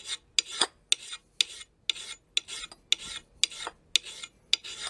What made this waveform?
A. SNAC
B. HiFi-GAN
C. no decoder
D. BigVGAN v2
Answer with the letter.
C